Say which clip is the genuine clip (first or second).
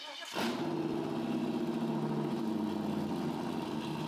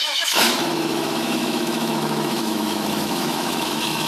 first